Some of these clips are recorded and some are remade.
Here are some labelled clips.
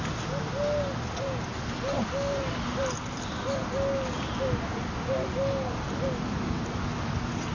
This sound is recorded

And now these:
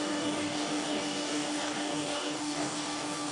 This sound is remade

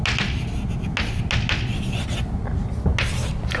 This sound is recorded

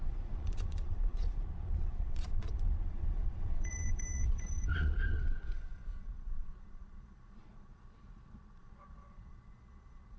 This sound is remade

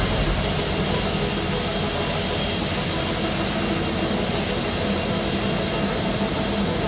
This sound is recorded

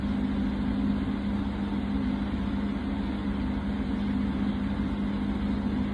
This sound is recorded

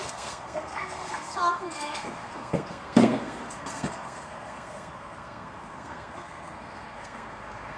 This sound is remade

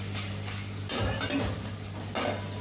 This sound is recorded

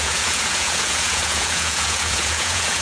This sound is remade